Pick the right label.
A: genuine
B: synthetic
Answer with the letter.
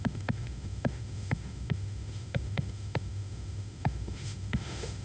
B